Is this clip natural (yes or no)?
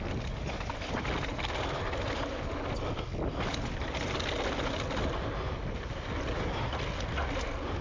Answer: yes